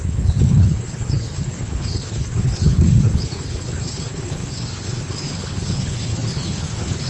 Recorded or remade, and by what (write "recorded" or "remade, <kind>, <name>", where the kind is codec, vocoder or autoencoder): remade, codec, HILCodec